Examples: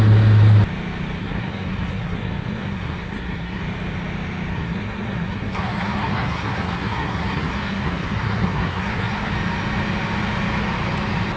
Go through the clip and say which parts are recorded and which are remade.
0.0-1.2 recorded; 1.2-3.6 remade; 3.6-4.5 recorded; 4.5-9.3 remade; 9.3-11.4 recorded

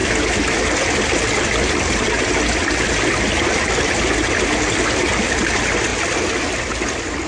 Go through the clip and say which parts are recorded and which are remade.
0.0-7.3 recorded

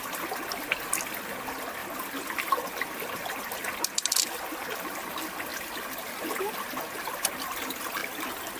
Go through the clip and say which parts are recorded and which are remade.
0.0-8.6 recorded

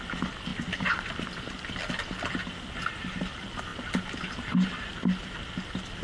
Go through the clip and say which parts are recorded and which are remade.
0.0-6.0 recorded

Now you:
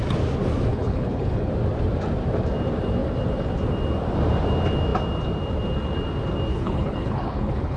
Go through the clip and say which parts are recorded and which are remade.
0.0-0.7 recorded; 0.7-1.5 remade; 1.5-6.5 recorded; 6.5-7.8 remade

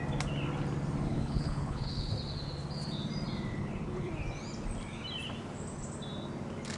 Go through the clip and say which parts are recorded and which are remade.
0.0-1.1 recorded; 1.1-2.1 remade; 2.1-3.5 recorded; 3.5-4.1 remade; 4.1-6.8 recorded